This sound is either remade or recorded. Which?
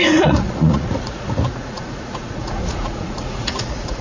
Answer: remade